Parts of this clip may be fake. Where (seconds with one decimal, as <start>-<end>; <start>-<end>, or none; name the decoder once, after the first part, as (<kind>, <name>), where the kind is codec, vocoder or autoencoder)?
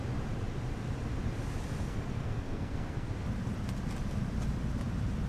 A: 1.8-3.1 (codec, SNAC)